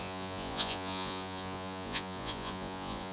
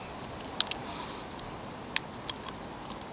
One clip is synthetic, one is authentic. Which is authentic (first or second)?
second